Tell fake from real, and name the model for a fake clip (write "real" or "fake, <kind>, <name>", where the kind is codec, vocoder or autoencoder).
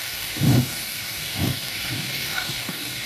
fake, codec, DAC